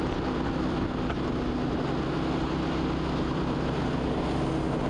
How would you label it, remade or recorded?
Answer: recorded